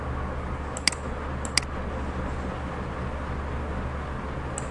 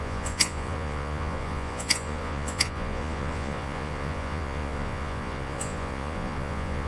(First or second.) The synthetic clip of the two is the second